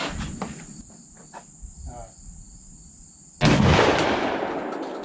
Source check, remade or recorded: recorded